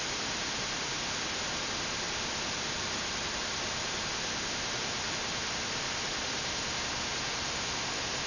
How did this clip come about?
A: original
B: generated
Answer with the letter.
A